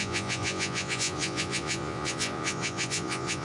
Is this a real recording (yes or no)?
no